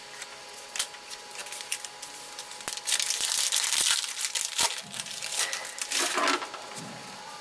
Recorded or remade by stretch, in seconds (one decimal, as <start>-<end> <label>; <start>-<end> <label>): 0.0-7.4 recorded